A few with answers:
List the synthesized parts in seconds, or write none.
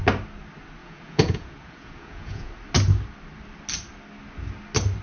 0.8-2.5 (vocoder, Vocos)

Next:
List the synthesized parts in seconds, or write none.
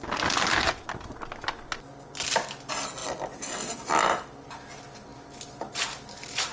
none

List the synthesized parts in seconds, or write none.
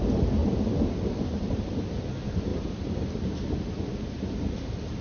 none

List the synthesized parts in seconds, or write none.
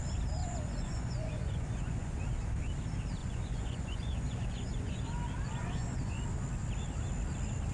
0.4-2.2 (vocoder, Vocos); 3.2-5.0; 5.6-6.2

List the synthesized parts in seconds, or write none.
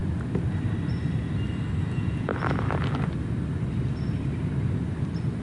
1.8-2.3 (vocoder, Vocos)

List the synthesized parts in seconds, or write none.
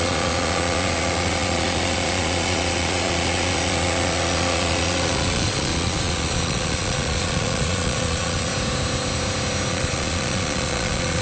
0.0-8.5 (vocoder, Vocos); 9.7-11.2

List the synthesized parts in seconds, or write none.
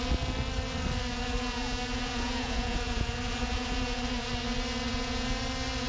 1.1-4.3 (vocoder, Vocos); 4.9-5.4